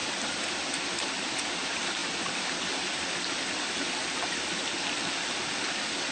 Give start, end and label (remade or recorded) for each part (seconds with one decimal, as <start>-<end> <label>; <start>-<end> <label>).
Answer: 0.0-6.1 recorded